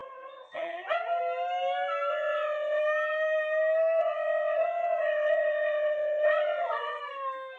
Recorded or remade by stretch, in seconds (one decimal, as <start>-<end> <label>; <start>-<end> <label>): 0.0-1.2 remade; 1.2-2.1 recorded; 2.1-2.8 remade; 2.8-4.0 recorded; 4.0-7.0 remade; 7.0-7.6 recorded